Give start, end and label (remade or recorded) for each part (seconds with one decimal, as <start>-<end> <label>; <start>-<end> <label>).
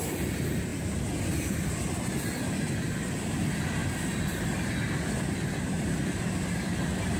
0.0-3.8 recorded; 3.8-4.7 remade; 4.7-7.2 recorded